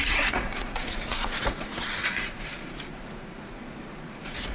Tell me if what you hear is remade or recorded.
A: remade